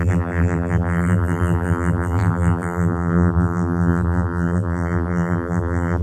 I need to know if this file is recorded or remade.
remade